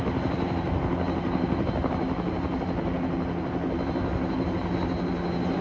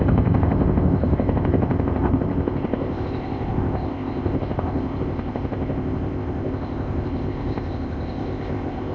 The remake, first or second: second